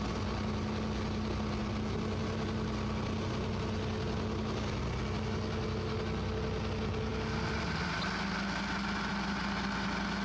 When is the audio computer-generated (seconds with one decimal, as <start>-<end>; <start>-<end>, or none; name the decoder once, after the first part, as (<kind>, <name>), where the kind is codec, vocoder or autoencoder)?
none